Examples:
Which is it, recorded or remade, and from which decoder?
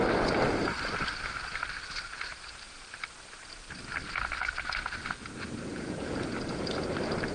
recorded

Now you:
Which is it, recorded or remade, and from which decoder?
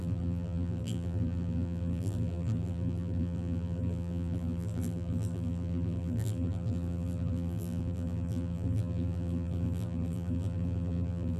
remade, vocoder, BigVGAN v2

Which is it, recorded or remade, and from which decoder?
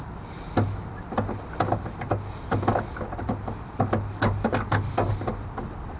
recorded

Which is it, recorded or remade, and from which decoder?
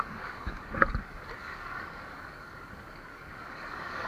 remade, codec, DAC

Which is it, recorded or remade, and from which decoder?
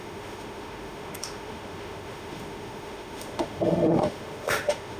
remade, autoencoder, DAC-VAE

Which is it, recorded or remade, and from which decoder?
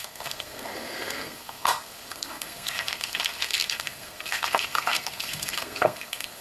remade, codec, SNAC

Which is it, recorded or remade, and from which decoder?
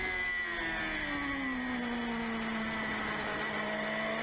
recorded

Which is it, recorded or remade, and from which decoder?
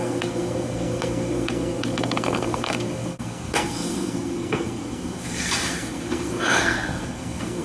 remade, codec, SNAC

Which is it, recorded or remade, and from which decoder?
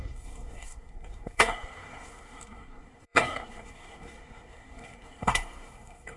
remade, codec, SNAC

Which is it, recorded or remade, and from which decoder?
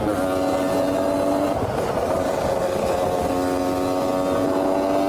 recorded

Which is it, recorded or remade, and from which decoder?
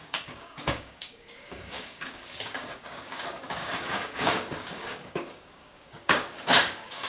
remade, codec, DAC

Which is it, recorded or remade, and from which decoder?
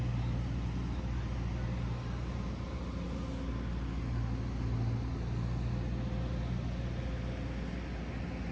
recorded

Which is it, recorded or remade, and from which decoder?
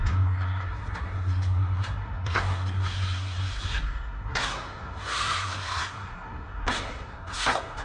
remade, codec, SNAC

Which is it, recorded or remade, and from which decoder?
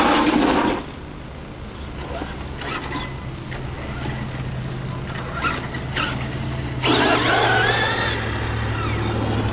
recorded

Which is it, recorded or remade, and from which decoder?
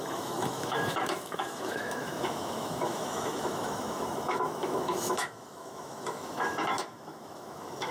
remade, autoencoder, DAC-VAE